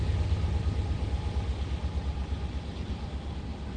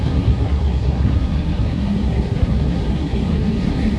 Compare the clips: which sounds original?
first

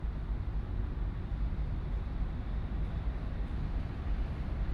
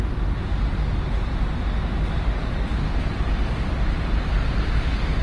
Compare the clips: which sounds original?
second